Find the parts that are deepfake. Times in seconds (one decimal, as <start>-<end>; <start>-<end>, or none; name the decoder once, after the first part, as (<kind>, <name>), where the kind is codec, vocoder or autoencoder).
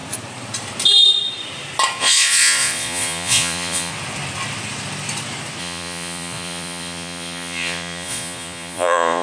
2.0-3.9 (vocoder, Vocos); 5.6-9.2